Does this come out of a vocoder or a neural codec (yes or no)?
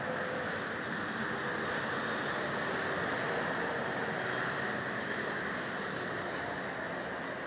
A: no